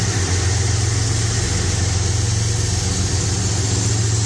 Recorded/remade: recorded